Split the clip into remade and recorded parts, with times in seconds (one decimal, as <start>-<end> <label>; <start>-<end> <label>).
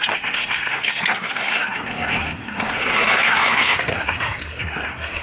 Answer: 0.0-5.2 remade